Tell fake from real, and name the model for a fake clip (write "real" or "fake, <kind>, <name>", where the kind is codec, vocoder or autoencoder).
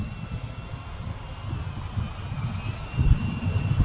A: real